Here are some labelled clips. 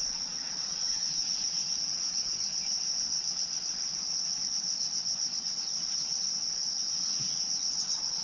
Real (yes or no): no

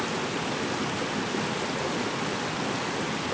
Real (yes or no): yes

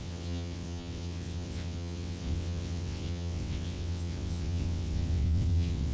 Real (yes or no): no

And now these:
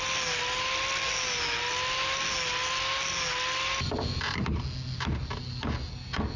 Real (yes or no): yes